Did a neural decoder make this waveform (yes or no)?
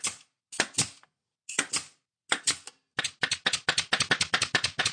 no